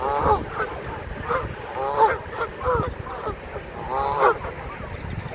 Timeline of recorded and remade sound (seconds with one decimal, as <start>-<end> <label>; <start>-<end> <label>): 0.0-5.3 recorded